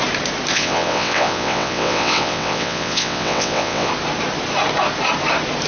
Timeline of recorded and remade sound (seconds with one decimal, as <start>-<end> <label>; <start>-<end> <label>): 0.0-0.5 recorded; 0.5-3.9 remade; 3.9-5.7 recorded